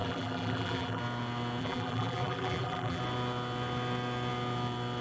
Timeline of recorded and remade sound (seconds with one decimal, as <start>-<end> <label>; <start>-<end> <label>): 0.0-1.0 remade; 1.0-1.6 recorded; 1.6-3.0 remade; 3.0-5.0 recorded

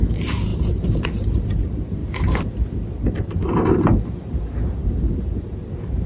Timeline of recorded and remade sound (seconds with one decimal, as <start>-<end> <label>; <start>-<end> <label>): 0.0-2.0 remade; 2.0-3.4 recorded; 3.4-6.1 remade

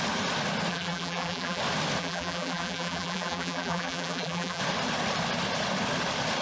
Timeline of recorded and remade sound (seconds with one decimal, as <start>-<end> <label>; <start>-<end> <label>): 0.0-0.7 recorded; 0.7-1.6 remade; 1.6-2.0 recorded; 2.0-4.6 remade; 4.6-6.4 recorded

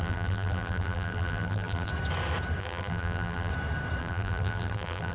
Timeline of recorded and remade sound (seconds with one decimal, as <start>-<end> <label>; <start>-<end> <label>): 0.0-1.9 remade; 1.9-2.6 recorded; 2.6-3.5 remade; 3.5-4.0 recorded; 4.0-5.1 remade